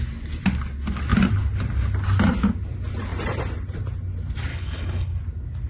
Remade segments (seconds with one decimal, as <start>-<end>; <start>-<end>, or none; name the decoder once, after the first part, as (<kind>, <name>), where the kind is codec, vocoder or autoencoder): 4.5-5.2 (codec, HILCodec)